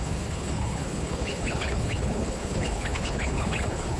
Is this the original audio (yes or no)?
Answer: no